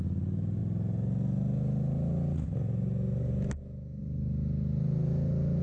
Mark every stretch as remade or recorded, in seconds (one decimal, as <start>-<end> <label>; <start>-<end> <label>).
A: 0.0-5.6 recorded